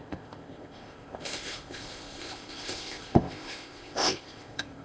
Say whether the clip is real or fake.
fake